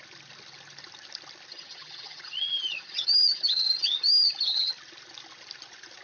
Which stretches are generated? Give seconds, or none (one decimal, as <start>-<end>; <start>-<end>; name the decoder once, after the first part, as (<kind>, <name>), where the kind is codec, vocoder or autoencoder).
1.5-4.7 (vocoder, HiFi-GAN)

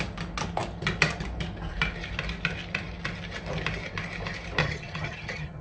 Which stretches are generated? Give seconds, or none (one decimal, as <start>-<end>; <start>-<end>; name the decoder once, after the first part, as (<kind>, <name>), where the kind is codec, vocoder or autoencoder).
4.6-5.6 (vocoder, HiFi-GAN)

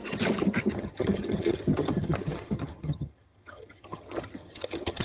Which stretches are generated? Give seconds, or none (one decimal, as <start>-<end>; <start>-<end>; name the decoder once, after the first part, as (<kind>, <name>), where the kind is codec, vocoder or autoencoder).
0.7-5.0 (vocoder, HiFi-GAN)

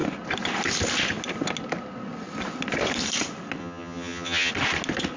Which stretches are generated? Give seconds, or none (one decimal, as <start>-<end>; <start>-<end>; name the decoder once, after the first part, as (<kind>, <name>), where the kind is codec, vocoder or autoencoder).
3.6-4.5 (vocoder, HiFi-GAN)